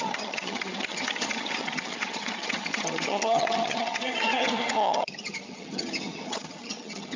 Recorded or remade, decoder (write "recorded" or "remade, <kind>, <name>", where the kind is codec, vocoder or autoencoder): remade, vocoder, HiFi-GAN